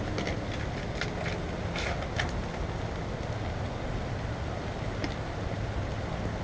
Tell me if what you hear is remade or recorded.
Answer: recorded